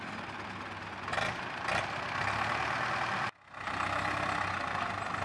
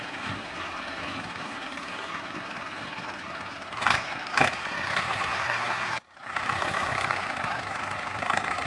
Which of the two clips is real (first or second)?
first